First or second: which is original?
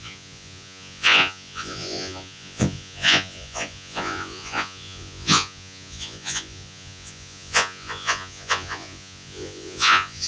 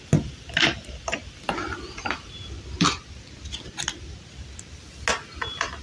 second